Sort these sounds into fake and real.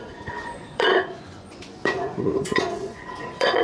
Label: fake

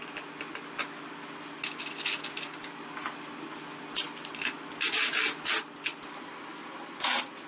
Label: real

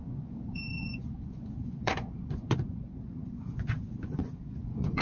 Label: fake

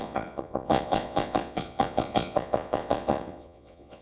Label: fake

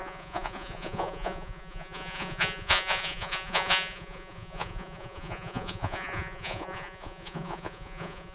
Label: fake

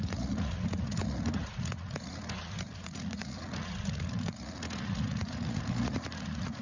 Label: fake